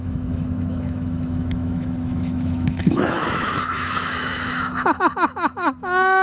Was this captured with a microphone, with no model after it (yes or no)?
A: no